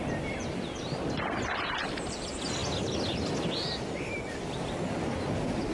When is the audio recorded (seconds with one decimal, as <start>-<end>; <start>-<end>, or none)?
0.0-5.7